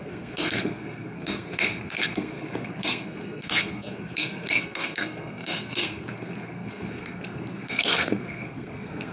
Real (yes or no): no